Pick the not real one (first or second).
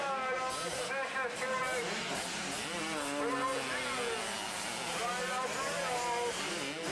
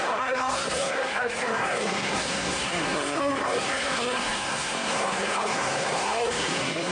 second